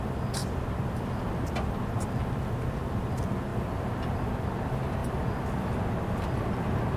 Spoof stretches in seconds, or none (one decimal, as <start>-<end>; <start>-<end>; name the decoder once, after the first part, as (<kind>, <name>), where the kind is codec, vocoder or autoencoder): none